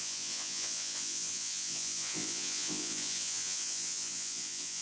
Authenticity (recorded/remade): remade